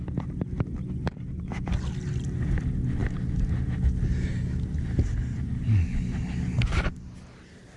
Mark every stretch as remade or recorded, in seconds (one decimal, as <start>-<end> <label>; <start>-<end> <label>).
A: 0.0-7.8 recorded